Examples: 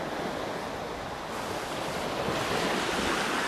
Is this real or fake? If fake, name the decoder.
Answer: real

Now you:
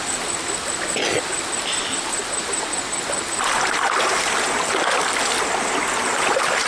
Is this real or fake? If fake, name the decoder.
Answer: real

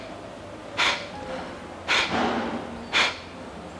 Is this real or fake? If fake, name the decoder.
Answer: real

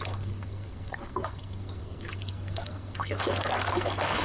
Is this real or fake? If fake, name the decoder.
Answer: fake, codec, SNAC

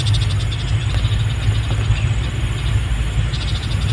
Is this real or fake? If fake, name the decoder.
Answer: real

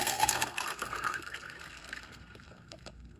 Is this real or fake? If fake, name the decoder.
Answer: fake, codec, SNAC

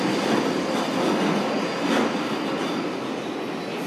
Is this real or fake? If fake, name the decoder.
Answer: real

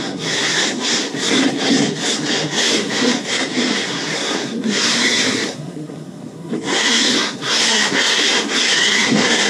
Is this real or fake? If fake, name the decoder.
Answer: fake, codec, SNAC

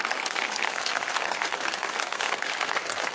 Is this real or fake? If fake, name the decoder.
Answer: fake, codec, SNAC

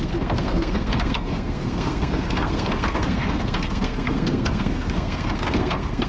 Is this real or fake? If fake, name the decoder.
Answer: fake, codec, SNAC